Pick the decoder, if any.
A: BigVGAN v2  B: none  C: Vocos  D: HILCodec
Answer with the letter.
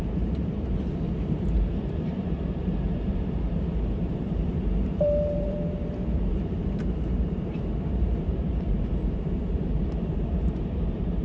A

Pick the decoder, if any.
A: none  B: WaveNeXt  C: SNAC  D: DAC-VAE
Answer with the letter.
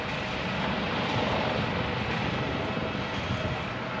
A